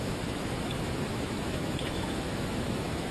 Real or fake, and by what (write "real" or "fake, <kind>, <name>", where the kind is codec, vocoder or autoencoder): fake, autoencoder, DAC-VAE